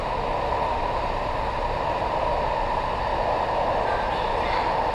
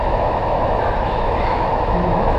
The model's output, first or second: second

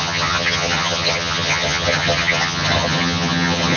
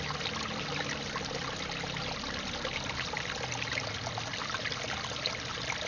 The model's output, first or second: first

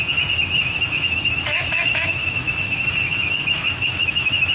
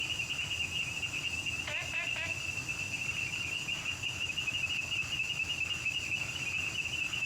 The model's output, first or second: first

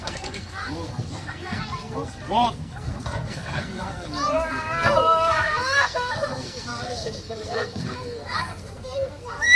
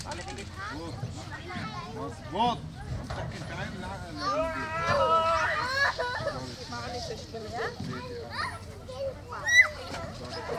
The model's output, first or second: first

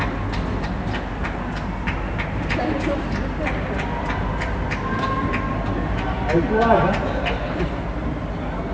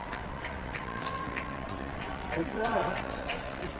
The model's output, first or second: second